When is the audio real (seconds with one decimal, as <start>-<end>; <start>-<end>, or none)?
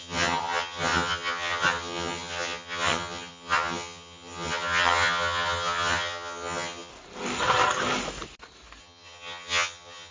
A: 6.9-8.8